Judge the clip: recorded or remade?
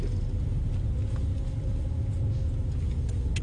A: recorded